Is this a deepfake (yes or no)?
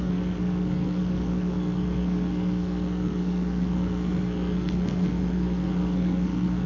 yes